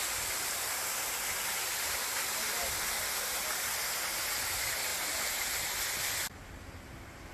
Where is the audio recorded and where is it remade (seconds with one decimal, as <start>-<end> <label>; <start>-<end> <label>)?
0.0-7.3 recorded